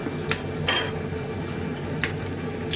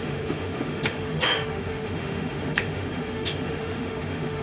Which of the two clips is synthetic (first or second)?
second